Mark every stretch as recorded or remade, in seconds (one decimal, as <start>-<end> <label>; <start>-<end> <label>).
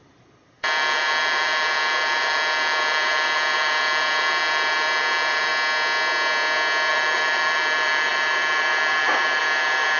0.0-5.5 remade; 5.5-6.9 recorded; 6.9-10.0 remade